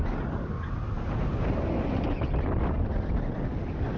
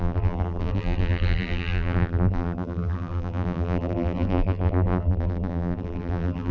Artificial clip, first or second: second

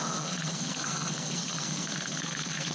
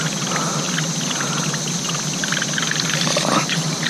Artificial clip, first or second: first